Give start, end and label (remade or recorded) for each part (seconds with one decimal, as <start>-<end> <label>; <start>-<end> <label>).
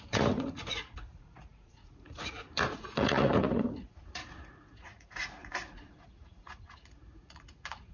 0.0-7.9 remade